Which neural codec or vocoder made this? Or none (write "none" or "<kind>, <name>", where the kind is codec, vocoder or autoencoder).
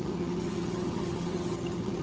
vocoder, HiFi-GAN